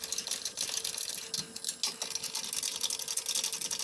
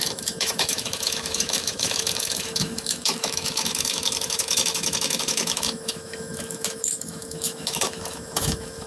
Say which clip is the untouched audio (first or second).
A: first